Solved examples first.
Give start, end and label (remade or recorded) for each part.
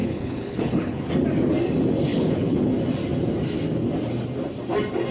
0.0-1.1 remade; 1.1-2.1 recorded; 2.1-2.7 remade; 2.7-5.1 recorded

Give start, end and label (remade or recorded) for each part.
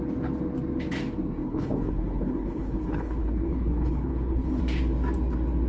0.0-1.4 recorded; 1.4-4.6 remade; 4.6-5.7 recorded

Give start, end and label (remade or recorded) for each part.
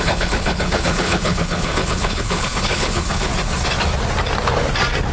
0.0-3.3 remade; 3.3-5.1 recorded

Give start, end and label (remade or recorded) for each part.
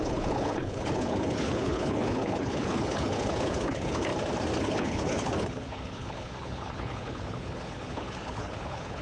0.0-4.1 remade; 4.1-4.6 recorded; 4.6-9.0 remade